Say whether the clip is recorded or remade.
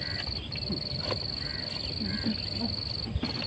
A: recorded